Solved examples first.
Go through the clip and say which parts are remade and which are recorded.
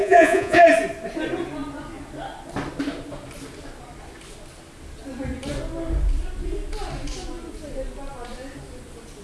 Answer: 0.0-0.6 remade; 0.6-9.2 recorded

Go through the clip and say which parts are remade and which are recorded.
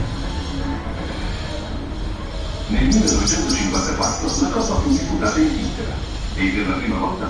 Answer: 0.0-7.3 recorded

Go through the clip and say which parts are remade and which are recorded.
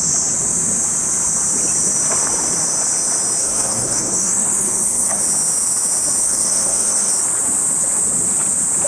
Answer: 0.0-3.4 recorded; 3.4-5.2 remade; 5.2-6.2 recorded; 6.2-7.1 remade; 7.1-8.9 recorded